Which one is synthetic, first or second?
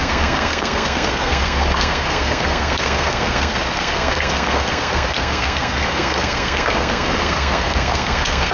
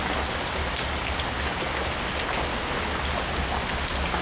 first